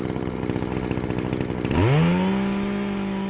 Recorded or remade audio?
recorded